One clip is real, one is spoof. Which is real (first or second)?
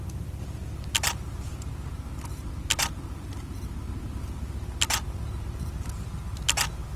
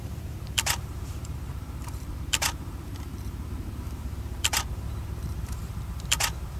first